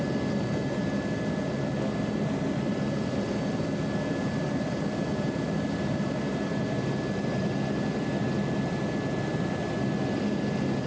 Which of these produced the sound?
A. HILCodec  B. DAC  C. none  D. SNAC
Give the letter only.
C